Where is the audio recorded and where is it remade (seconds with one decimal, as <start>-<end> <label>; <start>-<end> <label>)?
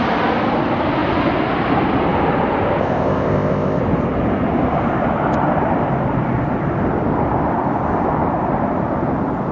0.0-2.8 recorded; 2.8-3.8 remade; 3.8-9.5 recorded